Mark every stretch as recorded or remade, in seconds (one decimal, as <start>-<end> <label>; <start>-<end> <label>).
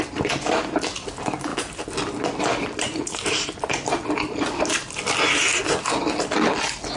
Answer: 0.0-7.0 recorded